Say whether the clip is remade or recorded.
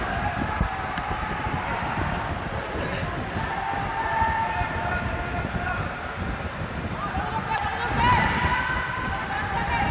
recorded